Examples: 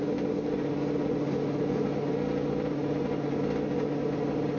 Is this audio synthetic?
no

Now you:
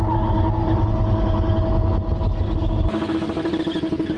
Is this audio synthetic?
no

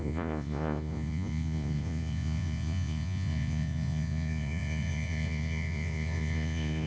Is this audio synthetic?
yes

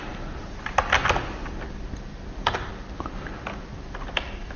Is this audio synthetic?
no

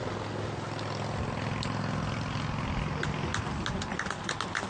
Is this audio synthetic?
no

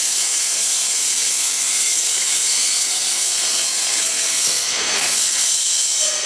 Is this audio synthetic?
yes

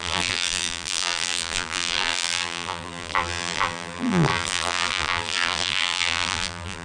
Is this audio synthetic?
yes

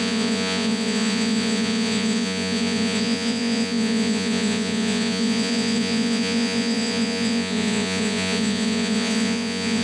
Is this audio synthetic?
yes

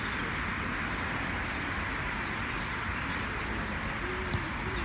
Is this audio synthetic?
no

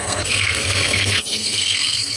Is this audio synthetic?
yes